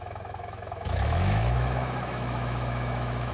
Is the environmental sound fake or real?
fake